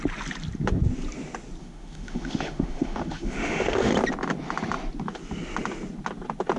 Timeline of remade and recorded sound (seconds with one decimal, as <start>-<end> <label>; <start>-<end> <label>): 0.0-1.6 recorded; 1.6-3.9 remade; 3.9-6.6 recorded